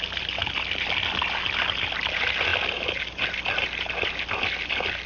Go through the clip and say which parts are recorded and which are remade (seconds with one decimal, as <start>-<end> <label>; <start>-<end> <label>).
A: 0.0-5.1 recorded